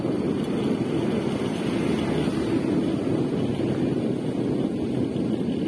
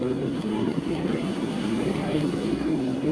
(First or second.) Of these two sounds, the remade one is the second